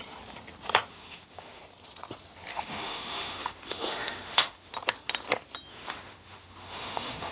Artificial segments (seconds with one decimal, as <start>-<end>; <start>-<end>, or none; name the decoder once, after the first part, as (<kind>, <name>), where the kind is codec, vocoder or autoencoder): 0.9-1.6 (autoencoder, DAC-VAE); 2.5-4.7; 5.7-7.3